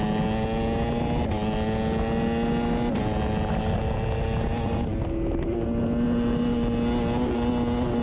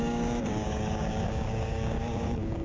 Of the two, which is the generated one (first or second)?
second